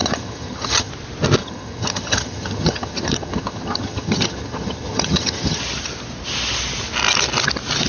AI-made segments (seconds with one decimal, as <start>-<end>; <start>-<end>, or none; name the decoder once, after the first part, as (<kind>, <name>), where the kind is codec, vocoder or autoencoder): 0.0-0.9 (vocoder, HiFi-GAN); 1.4-5.6